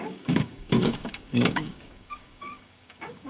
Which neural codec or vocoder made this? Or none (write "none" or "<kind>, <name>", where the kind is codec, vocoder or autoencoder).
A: codec, DAC